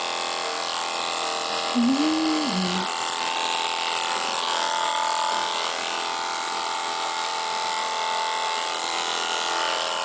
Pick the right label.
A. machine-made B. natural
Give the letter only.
B